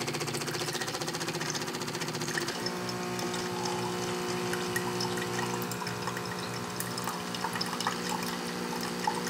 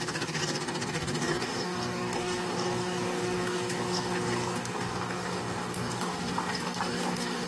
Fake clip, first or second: second